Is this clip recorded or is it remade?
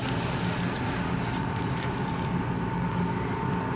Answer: recorded